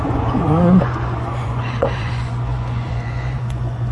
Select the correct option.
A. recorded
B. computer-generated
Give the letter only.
B